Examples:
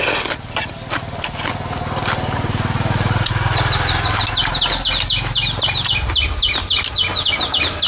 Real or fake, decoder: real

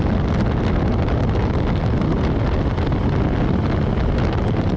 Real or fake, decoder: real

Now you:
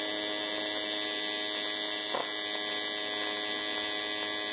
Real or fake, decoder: real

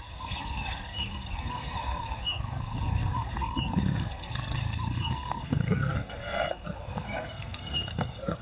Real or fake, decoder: fake, codec, SNAC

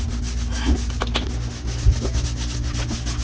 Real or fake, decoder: real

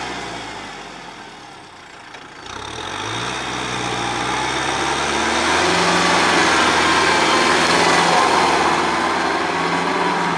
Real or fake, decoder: real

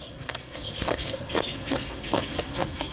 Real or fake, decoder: fake, codec, SNAC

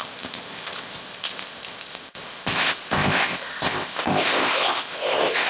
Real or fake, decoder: fake, codec, ZipCodec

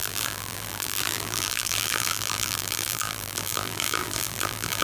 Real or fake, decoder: fake, vocoder, BigVGAN v2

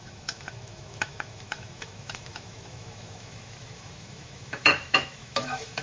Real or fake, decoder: fake, autoencoder, DAC-VAE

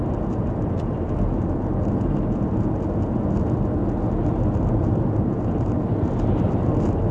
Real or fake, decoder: real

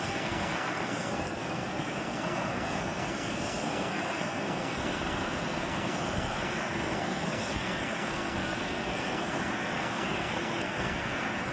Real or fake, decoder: fake, codec, SNAC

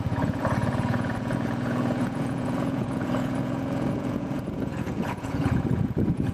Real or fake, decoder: fake, vocoder, Vocos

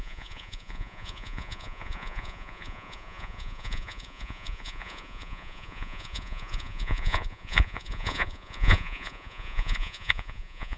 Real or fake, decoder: fake, vocoder, Vocos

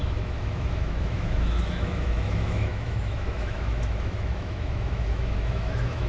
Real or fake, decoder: fake, autoencoder, DAC-VAE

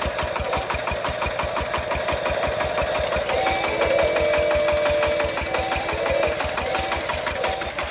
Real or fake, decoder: real